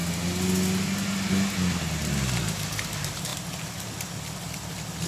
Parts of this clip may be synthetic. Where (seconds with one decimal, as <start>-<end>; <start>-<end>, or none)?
none